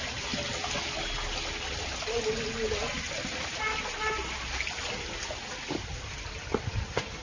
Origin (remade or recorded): recorded